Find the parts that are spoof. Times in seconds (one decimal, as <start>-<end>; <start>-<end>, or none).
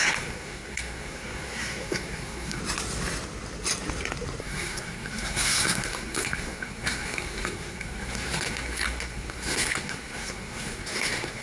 0.0-2.6; 4.4-11.4